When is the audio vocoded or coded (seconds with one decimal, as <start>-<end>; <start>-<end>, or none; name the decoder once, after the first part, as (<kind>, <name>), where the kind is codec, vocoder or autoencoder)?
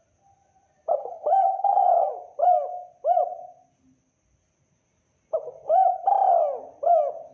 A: 0.9-2.1 (vocoder, HiFi-GAN)